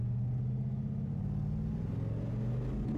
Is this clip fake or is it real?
real